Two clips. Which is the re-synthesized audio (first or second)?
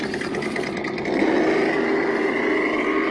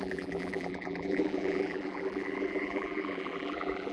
second